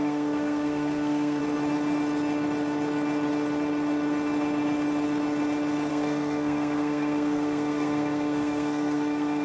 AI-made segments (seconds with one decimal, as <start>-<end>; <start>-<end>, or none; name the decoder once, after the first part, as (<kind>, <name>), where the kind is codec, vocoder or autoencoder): 0.0-1.4 (codec, SNAC); 5.9-9.4